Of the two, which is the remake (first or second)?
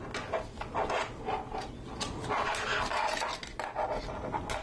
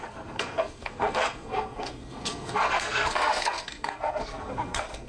second